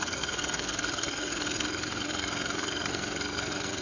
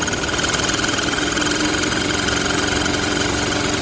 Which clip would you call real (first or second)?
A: second